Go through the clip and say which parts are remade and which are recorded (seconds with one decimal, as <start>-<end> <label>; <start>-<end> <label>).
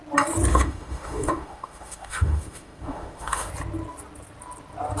0.0-0.5 recorded; 0.5-3.5 remade; 3.5-5.0 recorded